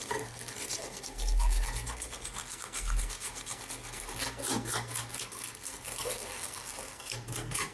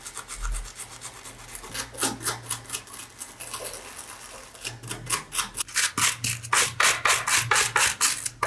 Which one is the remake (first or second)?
first